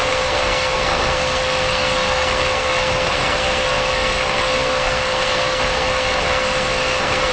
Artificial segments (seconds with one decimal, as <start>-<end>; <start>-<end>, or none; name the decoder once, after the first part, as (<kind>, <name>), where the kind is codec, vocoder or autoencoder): 0.0-7.3 (codec, SNAC)